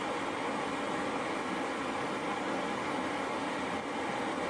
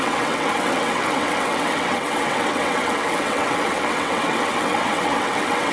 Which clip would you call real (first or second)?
first